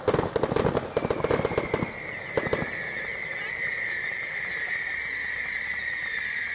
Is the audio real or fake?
real